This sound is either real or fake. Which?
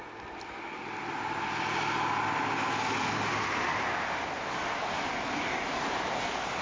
real